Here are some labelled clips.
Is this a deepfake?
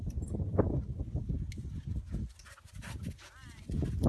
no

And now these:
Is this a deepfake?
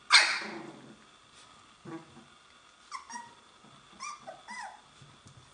no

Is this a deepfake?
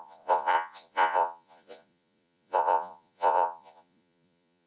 yes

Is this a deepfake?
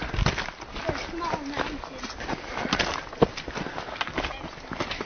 no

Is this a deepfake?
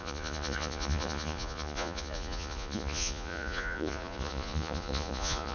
yes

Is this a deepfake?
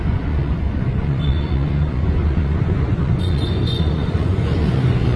yes